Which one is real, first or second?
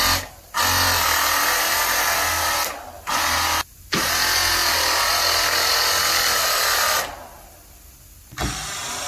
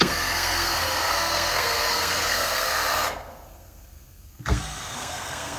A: first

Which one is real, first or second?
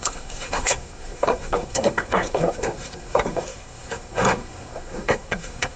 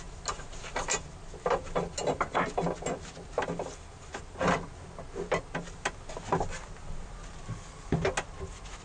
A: second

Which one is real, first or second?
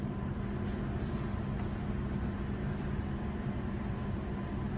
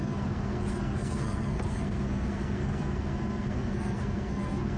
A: first